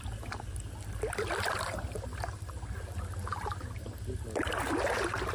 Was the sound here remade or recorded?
recorded